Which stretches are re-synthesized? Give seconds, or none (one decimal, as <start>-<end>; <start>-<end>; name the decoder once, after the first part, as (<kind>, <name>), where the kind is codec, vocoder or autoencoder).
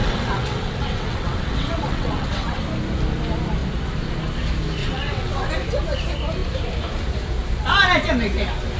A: 0.0-2.6 (vocoder, WaveNeXt); 4.8-5.5